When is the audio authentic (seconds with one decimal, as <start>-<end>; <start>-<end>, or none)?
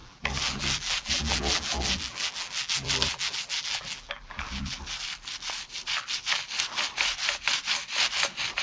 4.8-8.6